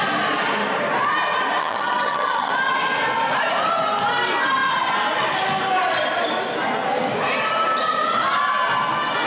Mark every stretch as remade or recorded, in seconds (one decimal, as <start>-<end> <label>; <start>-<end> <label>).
0.0-1.6 recorded; 1.6-2.5 remade; 2.5-9.3 recorded